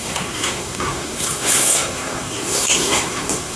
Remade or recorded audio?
remade